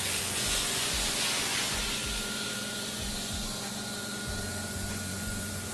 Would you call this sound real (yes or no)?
no